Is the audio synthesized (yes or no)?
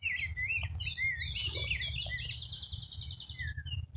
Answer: no